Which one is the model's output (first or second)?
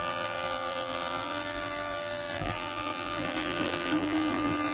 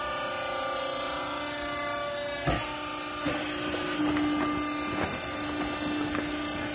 first